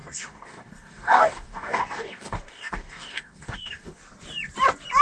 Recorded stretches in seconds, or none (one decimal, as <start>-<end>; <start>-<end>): 4.0-5.0